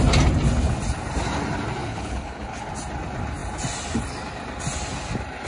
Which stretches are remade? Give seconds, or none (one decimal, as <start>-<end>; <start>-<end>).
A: 1.8-2.7